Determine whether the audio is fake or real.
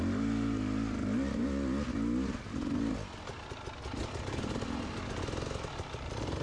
real